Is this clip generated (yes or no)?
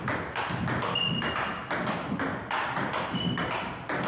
yes